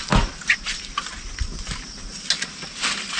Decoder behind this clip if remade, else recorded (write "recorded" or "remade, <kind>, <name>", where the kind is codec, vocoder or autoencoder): recorded